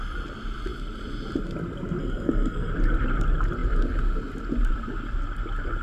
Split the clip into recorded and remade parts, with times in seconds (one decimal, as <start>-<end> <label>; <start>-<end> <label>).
0.0-2.0 recorded; 2.0-2.7 remade; 2.7-5.8 recorded